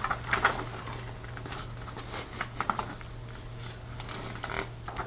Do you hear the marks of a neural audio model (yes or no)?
no